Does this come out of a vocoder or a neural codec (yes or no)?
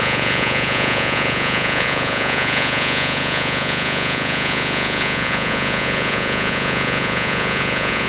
yes